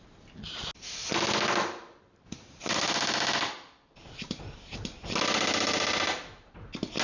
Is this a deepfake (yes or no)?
no